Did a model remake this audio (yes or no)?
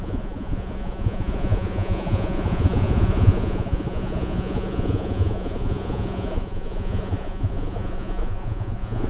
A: yes